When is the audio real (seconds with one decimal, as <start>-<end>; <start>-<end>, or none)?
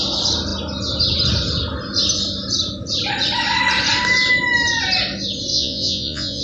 0.0-5.5